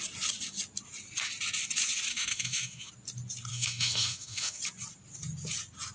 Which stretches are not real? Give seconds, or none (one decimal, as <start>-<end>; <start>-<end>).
2.1-2.9; 3.5-4.6